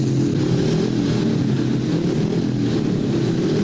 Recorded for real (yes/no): yes